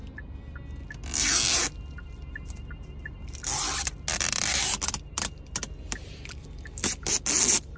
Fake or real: real